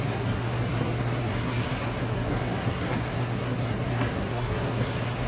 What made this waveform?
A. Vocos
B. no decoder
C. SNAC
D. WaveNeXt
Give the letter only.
C